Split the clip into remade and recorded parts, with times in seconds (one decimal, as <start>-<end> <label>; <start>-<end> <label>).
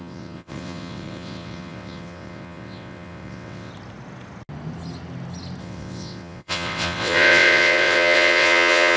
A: 0.0-3.7 remade; 3.7-5.6 recorded; 5.6-9.0 remade